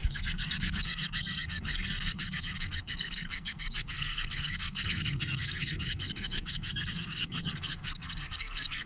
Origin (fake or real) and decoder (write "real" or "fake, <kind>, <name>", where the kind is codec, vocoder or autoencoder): fake, codec, SNAC